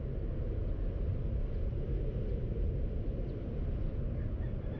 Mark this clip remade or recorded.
recorded